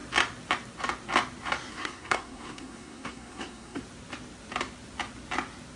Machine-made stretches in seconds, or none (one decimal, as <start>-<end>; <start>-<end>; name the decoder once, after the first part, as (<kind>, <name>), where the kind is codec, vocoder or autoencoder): 1.7-3.8 (codec, SNAC)